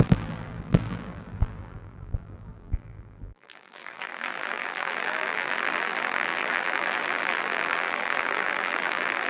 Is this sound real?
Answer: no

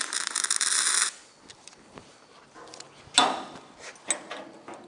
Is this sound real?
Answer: yes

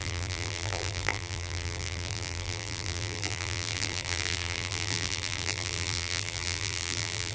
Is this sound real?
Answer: no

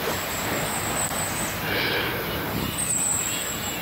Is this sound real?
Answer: yes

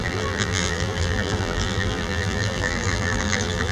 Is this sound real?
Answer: no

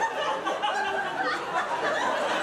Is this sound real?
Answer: yes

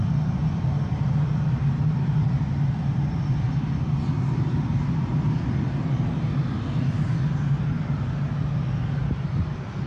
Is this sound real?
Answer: yes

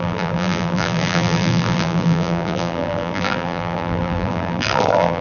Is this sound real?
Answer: no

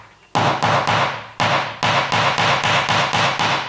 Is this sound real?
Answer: yes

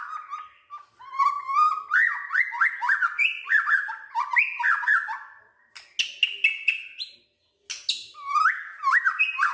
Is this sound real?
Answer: yes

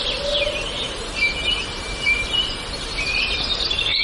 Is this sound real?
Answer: no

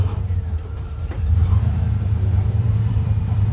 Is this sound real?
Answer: no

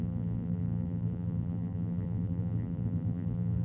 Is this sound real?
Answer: no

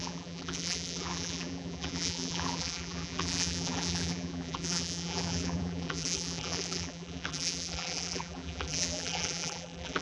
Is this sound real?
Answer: no